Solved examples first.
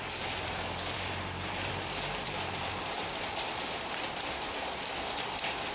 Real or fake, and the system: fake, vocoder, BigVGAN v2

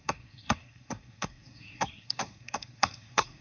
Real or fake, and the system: fake, codec, SNAC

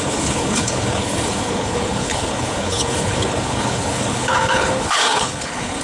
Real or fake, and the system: fake, codec, HILCodec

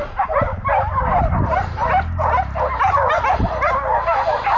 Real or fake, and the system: real